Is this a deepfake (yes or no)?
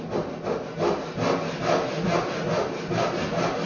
no